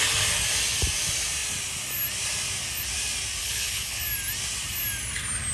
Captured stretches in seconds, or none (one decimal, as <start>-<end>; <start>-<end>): 0.0-3.4; 4.0-5.5